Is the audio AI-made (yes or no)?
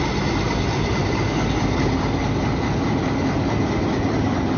no